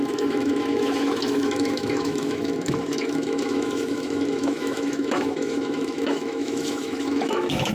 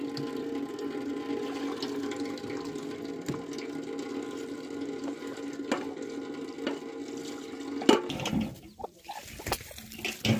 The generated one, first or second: first